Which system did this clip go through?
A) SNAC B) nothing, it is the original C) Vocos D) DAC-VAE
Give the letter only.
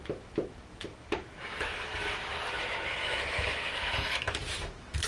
D